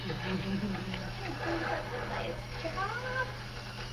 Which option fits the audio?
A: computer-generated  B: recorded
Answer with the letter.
B